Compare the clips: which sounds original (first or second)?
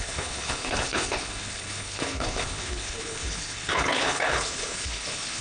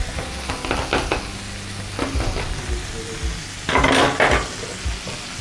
second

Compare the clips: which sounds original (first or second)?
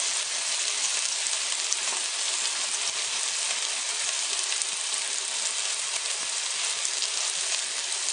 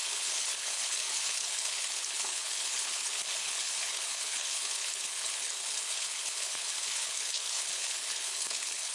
first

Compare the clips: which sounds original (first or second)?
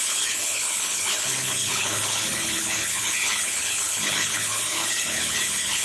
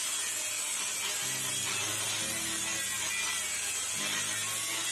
second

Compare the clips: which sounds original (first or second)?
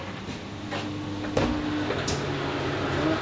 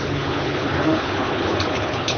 first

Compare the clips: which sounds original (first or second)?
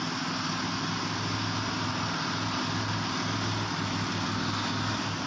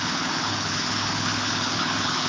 first